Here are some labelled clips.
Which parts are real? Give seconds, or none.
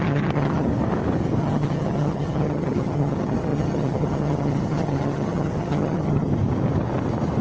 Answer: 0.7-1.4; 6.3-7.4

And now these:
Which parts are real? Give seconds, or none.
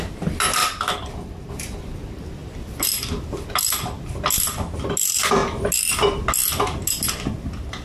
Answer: 0.0-7.8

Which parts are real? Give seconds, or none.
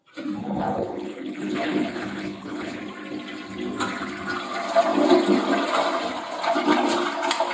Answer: 0.0-0.4; 2.8-7.5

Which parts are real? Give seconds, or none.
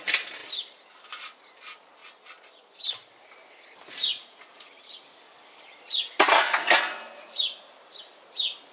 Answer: 0.0-4.1; 5.0-8.7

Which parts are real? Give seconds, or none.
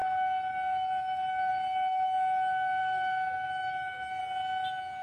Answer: 0.0-2.8; 4.2-5.0